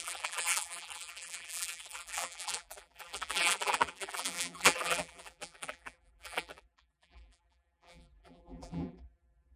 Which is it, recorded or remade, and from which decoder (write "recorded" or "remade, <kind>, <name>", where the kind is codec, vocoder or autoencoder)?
remade, vocoder, BigVGAN v2